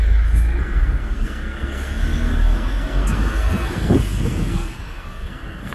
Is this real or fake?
fake